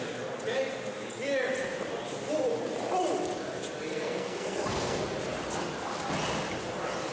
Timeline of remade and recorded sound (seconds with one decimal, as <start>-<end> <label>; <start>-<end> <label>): 0.0-3.9 recorded; 3.9-5.0 remade; 5.0-7.1 recorded